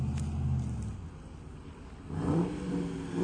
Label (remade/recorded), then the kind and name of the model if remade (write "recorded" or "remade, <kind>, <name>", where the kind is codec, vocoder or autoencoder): recorded